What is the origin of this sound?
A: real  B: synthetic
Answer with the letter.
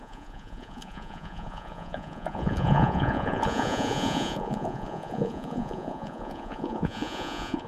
B